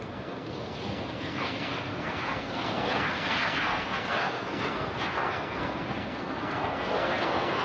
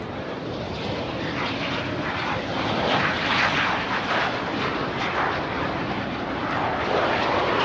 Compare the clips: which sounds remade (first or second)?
first